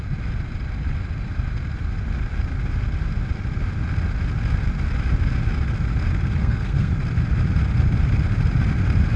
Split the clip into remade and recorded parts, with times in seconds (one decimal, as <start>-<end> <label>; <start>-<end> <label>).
0.0-6.4 recorded; 6.4-6.9 remade; 6.9-9.2 recorded